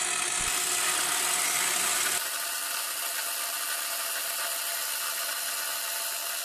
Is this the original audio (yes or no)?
yes